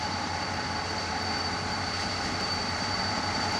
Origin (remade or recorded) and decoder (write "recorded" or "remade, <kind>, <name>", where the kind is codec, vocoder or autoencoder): remade, vocoder, BigVGAN v2